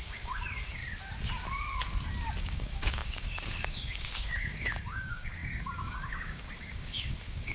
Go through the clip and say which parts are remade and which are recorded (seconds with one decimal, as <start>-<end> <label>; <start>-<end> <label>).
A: 0.0-0.8 remade; 0.8-2.4 recorded; 2.4-7.5 remade

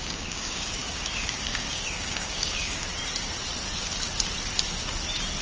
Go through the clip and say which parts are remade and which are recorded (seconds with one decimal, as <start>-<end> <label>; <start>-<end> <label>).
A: 0.0-2.9 remade; 2.9-5.4 recorded

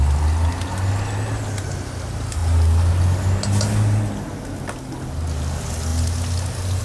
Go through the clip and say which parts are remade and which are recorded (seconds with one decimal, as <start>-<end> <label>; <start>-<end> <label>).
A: 0.0-6.8 recorded

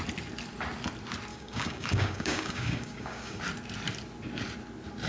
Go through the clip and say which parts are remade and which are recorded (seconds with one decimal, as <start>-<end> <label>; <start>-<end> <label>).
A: 0.0-1.3 recorded; 1.3-3.4 remade; 3.4-5.1 recorded

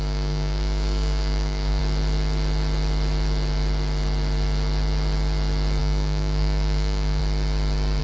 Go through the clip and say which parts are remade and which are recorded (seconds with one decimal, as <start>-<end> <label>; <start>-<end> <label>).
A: 0.0-1.8 remade; 1.8-5.8 recorded; 5.8-7.2 remade; 7.2-8.0 recorded